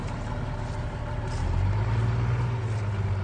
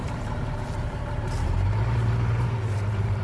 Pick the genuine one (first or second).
first